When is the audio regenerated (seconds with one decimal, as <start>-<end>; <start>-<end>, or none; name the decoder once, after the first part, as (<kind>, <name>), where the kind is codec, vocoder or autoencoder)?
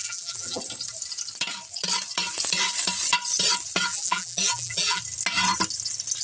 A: 0.0-0.6 (vocoder, BigVGAN v2); 3.9-5.0